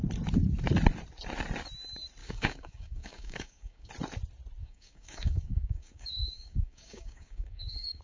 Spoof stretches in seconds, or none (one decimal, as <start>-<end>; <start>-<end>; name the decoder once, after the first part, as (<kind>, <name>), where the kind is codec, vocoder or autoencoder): 2.2-3.9 (codec, DAC); 4.6-8.0